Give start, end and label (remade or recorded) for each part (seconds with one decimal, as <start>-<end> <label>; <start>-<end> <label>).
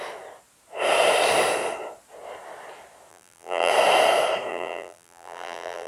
0.0-3.1 recorded; 3.1-3.7 remade; 3.7-4.5 recorded; 4.5-5.9 remade